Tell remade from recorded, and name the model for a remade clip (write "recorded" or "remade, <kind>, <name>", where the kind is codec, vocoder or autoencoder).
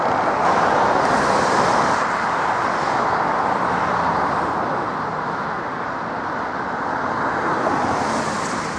recorded